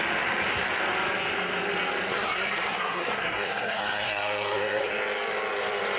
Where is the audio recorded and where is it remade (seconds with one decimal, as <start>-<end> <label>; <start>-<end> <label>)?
0.0-2.1 recorded; 2.1-4.9 remade; 4.9-6.0 recorded